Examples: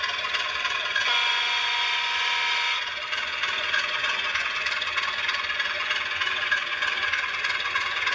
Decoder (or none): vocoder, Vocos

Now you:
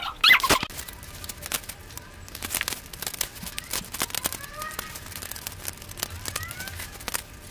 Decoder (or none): none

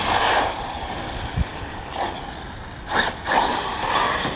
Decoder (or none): none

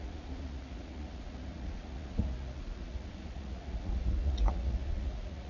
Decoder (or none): vocoder, Vocos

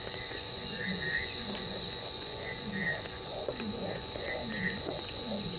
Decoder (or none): vocoder, Vocos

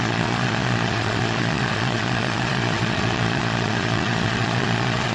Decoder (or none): vocoder, Vocos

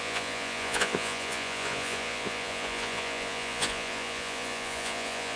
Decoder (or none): vocoder, Vocos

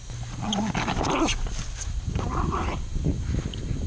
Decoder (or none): none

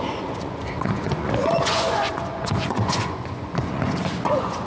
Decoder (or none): vocoder, Vocos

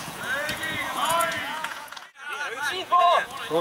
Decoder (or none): vocoder, Vocos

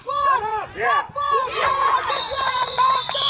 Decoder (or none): vocoder, Vocos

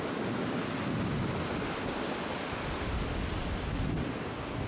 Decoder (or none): none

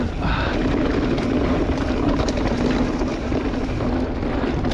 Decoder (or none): none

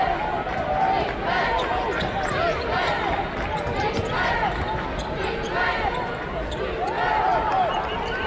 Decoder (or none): none